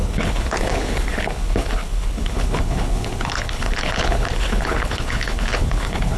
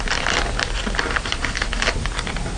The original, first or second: second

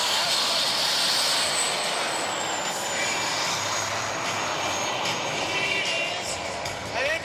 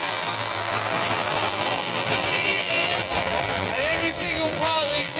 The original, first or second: first